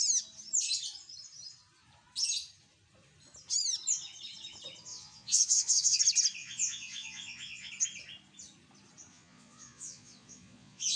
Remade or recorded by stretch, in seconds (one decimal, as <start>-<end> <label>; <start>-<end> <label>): 0.0-4.9 recorded; 4.9-6.0 remade; 6.0-6.4 recorded; 6.4-7.7 remade; 7.7-9.1 recorded; 9.1-11.0 remade